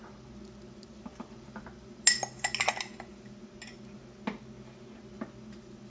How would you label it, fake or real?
real